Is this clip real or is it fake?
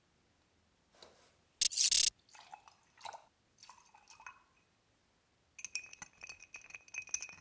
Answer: real